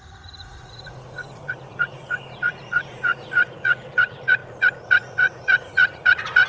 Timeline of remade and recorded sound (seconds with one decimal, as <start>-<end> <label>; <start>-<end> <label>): 0.0-6.5 remade